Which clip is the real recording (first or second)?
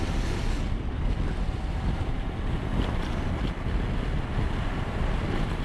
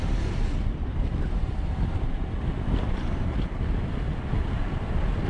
first